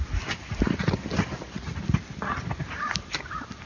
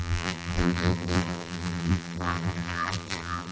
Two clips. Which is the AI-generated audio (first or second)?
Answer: second